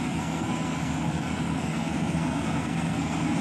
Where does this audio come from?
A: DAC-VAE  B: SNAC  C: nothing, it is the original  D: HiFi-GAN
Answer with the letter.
B